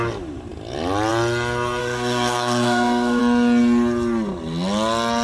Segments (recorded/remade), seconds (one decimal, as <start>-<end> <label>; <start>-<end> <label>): 0.0-1.8 recorded; 1.8-3.2 remade; 3.2-5.2 recorded